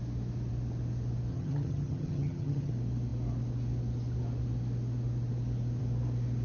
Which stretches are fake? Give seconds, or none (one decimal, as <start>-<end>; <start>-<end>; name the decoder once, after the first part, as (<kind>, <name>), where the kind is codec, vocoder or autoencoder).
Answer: 1.3-2.7 (vocoder, HiFi-GAN)